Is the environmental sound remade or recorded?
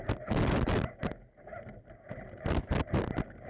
recorded